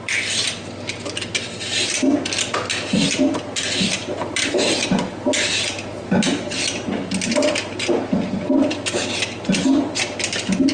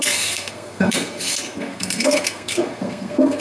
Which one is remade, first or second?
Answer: second